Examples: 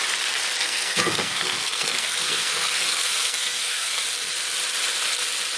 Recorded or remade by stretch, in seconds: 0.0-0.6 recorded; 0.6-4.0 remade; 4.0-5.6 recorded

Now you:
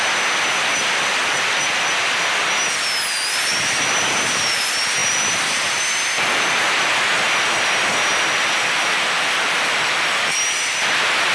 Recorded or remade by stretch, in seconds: 0.0-3.5 recorded; 3.5-4.6 remade; 4.6-5.0 recorded; 5.0-5.8 remade; 5.8-11.3 recorded

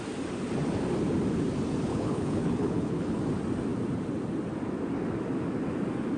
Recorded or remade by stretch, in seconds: 0.0-1.9 recorded; 1.9-3.2 remade; 3.2-6.2 recorded

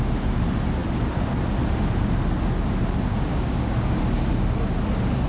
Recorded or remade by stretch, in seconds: 0.0-3.1 recorded; 3.1-4.0 remade; 4.0-5.3 recorded

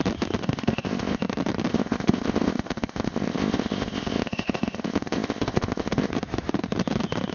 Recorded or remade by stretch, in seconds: 0.0-0.4 recorded; 0.4-1.2 remade; 1.2-1.7 recorded; 1.7-6.1 remade; 6.1-7.3 recorded

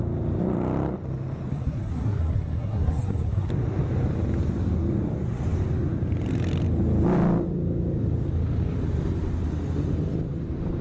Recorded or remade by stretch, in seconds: 0.0-1.5 recorded; 1.5-3.5 remade; 3.5-10.8 recorded

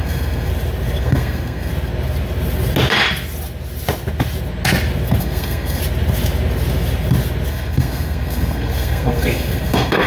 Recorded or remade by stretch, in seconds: 0.0-0.5 remade; 0.5-1.0 recorded; 1.0-1.7 remade; 1.7-5.2 recorded; 5.2-5.8 remade; 5.8-7.5 recorded; 7.5-10.1 remade

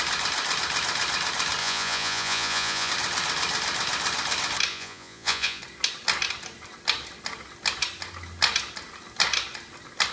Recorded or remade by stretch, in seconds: 0.0-1.6 recorded; 1.6-2.9 remade; 2.9-4.7 recorded; 4.7-5.6 remade; 5.6-10.1 recorded